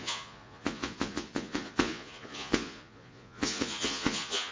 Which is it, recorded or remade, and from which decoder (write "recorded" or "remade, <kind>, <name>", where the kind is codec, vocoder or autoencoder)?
remade, vocoder, Vocos